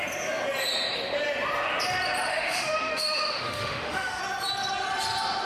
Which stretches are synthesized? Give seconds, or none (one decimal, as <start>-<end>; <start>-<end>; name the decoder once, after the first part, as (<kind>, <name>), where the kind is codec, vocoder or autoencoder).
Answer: 2.3-4.2 (autoencoder, DAC-VAE)